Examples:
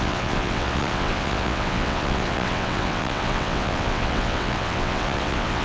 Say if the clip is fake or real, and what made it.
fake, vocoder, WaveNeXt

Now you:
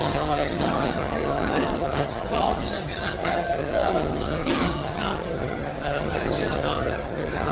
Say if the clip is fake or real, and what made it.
fake, vocoder, HiFi-GAN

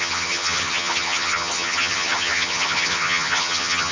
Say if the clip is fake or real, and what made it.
fake, vocoder, HiFi-GAN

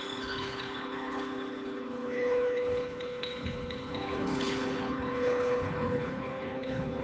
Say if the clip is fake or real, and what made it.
fake, codec, HILCodec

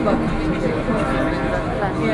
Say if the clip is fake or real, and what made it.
real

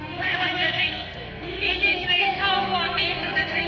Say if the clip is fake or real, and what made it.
fake, codec, SNAC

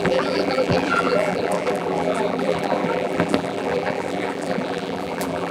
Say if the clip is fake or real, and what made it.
fake, vocoder, BigVGAN v2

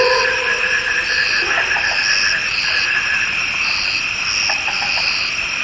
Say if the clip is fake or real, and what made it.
real